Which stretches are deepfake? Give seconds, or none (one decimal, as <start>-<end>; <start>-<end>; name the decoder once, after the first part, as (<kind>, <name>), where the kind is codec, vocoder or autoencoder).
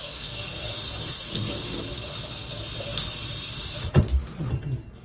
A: 0.0-1.8 (codec, SNAC)